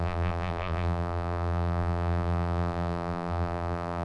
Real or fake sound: fake